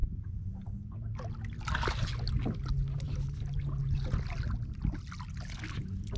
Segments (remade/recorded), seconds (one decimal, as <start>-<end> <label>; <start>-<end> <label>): 0.0-6.2 recorded